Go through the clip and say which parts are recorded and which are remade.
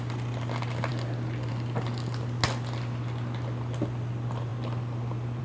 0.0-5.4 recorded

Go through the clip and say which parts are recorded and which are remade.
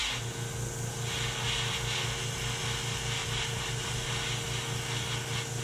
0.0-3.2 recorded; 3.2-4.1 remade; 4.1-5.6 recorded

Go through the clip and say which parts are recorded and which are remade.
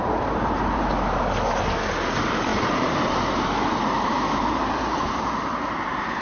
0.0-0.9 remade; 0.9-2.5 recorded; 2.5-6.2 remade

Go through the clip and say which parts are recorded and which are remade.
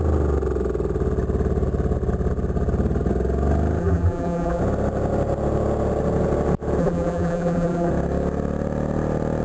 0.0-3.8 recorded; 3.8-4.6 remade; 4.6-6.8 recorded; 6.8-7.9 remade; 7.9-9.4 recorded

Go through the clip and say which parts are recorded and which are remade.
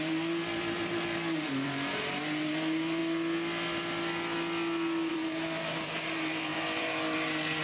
0.0-3.0 remade; 3.0-5.1 recorded; 5.1-7.6 remade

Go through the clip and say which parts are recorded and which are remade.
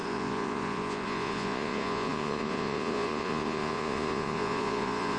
0.0-5.2 remade